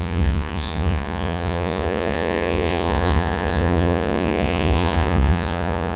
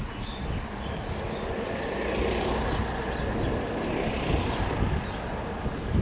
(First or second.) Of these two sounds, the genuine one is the second